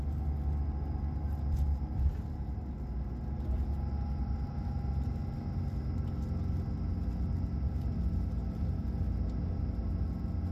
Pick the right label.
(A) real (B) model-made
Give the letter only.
A